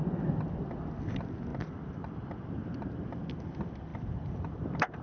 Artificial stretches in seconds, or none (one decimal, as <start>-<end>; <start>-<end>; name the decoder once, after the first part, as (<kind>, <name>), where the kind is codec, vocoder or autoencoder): 1.5-2.1 (vocoder, BigVGAN v2); 3.9-5.0